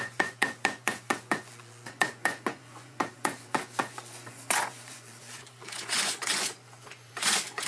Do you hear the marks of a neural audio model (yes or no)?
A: yes